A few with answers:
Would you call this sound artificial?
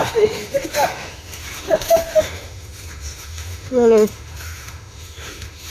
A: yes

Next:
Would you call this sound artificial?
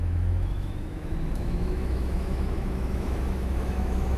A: yes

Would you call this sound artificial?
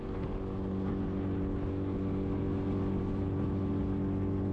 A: no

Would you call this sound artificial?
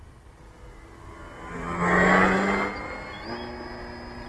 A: no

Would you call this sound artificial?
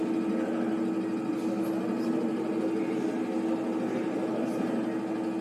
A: no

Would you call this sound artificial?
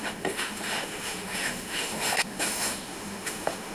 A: yes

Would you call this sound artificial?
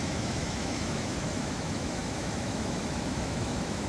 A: yes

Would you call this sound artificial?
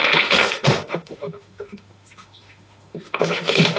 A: yes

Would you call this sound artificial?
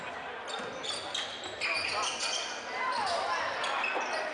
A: no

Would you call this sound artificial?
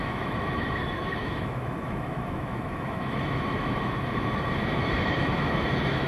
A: yes